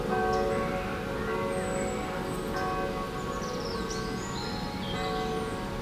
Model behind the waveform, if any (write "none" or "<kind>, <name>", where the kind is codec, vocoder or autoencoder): none